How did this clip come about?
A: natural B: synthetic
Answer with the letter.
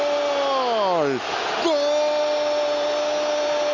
A